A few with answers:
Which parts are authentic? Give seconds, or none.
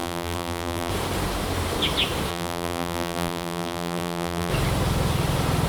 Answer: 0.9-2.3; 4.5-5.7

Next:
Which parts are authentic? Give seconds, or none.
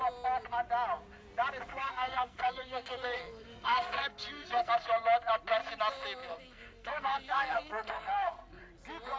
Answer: 0.0-1.7; 4.7-6.3; 8.6-9.2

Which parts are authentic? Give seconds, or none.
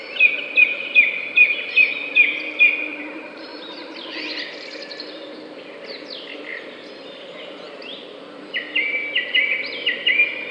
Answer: 3.5-4.6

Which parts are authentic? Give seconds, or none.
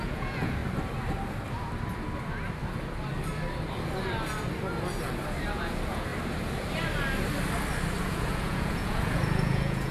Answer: 0.6-5.5; 6.1-8.0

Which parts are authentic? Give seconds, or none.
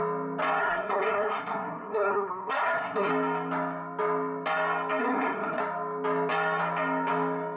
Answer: 0.0-0.6; 3.1-5.0; 5.6-7.6